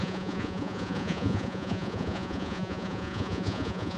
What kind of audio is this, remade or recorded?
remade